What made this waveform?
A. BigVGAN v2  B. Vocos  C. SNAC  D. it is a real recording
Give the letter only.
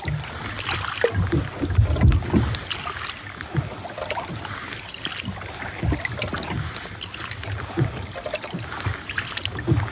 D